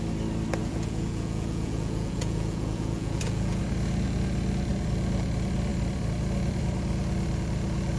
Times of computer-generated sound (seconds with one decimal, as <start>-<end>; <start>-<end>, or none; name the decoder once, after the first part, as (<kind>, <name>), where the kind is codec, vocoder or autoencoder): 0.6-3.6 (vocoder, Vocos)